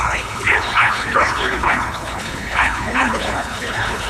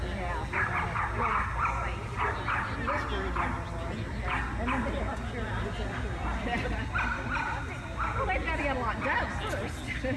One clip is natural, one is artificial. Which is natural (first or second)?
second